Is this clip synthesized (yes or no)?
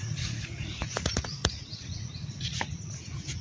yes